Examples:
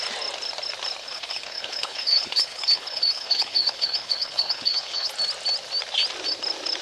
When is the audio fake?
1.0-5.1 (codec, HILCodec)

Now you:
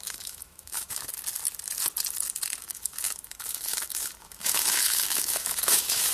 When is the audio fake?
0.0-1.1 (autoencoder, DAC-VAE); 2.6-6.1

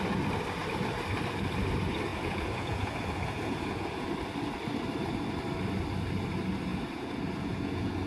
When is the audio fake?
2.1-4.1 (vocoder, Vocos); 6.7-8.1

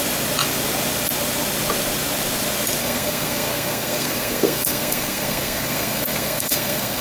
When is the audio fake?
2.8-7.0 (codec, SNAC)

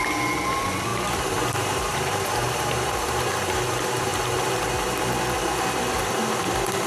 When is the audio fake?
0.9-2.9 (vocoder, BigVGAN v2)

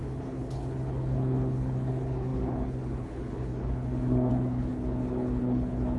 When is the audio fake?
0.0-6.0 (codec, HILCodec)